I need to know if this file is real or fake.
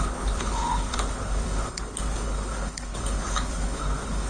fake